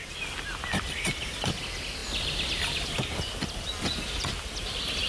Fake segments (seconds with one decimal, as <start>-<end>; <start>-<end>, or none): none